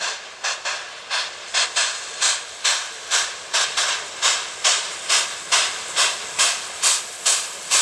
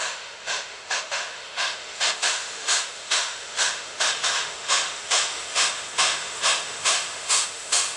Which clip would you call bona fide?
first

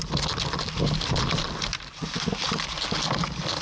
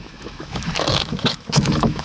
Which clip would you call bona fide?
first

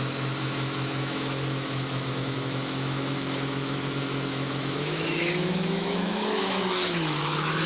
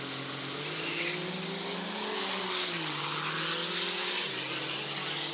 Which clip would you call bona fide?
second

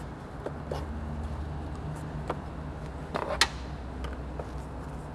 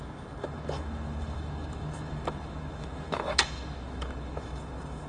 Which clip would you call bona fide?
first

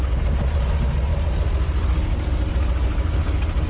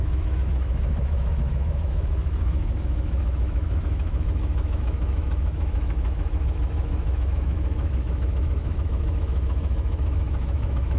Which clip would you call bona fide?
first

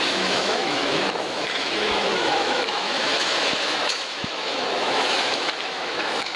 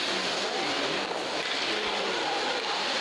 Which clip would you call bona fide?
second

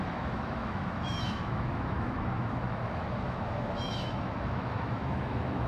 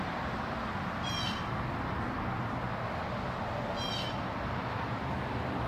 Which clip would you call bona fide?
second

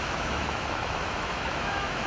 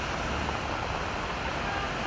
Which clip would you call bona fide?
second